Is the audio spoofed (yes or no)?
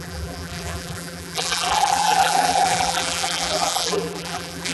yes